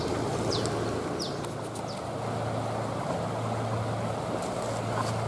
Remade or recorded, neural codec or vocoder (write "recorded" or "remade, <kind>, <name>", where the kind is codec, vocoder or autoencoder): recorded